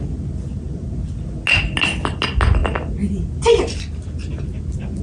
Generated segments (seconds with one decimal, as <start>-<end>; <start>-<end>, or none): none